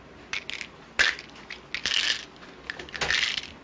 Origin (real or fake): real